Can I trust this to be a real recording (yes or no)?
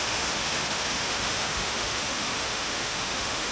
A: no